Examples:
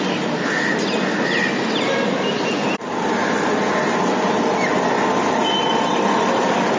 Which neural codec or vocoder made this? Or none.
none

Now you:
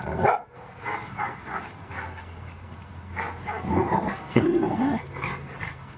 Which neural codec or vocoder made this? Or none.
codec, SNAC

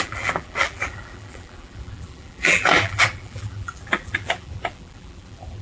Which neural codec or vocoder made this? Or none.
vocoder, BigVGAN v2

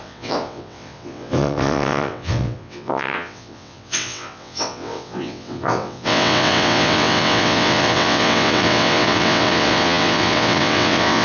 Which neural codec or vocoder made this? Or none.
vocoder, WaveNeXt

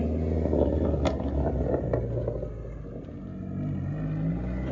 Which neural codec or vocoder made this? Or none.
none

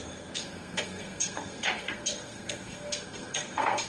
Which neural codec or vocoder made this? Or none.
codec, SNAC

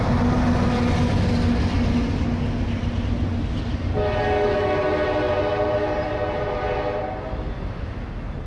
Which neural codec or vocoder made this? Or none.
none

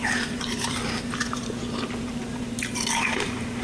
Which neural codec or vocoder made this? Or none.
vocoder, BigVGAN v2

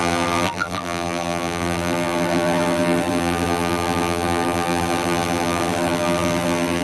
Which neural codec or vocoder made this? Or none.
vocoder, BigVGAN v2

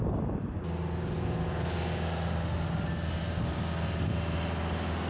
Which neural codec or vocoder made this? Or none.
none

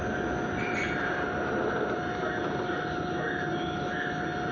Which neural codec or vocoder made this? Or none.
none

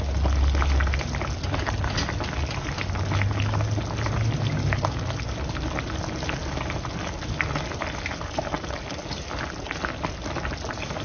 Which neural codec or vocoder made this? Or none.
none